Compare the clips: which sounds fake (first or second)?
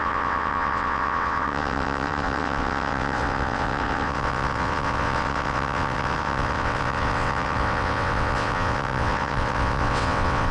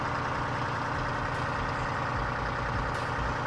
first